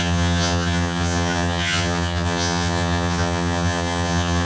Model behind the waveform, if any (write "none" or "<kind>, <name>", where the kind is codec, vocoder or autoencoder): vocoder, HiFi-GAN